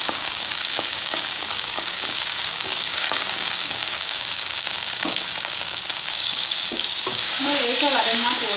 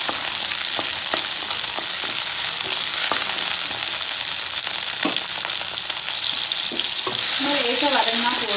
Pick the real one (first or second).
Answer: second